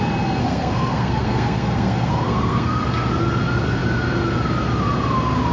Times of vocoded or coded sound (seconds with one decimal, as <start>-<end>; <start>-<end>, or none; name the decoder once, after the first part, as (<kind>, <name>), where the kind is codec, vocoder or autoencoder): 0.4-2.8 (codec, SNAC)